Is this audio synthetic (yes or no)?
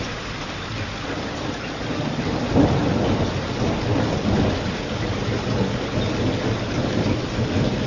no